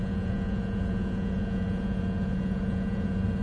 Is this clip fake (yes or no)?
yes